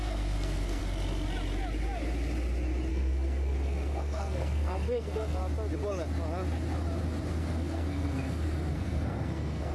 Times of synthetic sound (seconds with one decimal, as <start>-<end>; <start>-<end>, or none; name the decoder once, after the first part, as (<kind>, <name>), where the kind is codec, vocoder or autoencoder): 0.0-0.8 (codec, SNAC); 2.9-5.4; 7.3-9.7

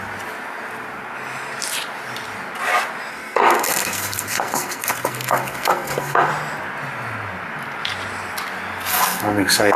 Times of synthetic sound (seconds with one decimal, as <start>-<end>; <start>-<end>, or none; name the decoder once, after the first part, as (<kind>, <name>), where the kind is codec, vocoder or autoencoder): 3.1-6.3 (codec, SNAC); 8.9-9.8

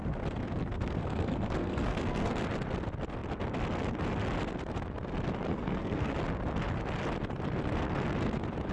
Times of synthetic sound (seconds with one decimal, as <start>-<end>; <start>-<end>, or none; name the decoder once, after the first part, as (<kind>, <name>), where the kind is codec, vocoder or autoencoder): 0.6-2.3 (codec, SNAC); 5.5-6.1